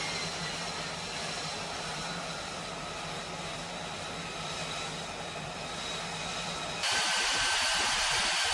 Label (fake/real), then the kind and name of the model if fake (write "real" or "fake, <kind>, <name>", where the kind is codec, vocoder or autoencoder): real